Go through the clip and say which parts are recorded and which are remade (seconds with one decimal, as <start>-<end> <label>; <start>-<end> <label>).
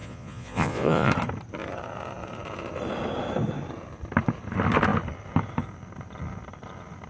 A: 0.0-1.1 remade; 1.1-7.1 recorded